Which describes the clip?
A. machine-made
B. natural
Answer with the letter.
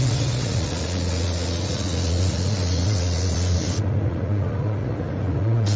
A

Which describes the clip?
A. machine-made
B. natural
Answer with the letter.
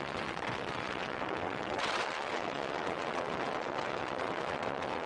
A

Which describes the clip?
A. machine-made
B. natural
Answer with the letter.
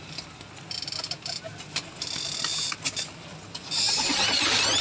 B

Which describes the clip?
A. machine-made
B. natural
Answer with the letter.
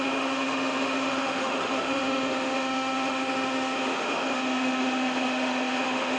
A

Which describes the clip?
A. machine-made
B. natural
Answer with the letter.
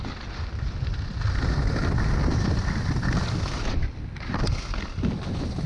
B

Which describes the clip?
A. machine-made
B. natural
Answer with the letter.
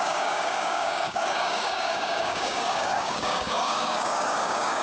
A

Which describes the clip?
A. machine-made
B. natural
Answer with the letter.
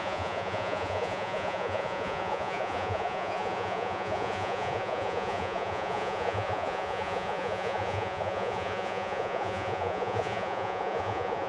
A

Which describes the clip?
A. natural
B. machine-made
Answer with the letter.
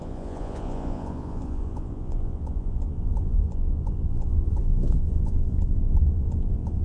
B